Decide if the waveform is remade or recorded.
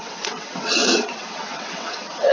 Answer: remade